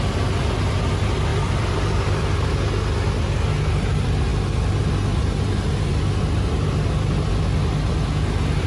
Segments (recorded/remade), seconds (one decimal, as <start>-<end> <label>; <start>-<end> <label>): 0.0-1.3 recorded; 1.3-2.5 remade; 2.5-8.7 recorded